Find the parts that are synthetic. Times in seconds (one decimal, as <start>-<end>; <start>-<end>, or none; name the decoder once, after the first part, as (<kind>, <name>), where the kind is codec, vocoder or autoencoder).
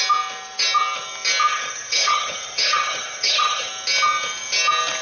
1.5-3.7 (codec, HILCodec)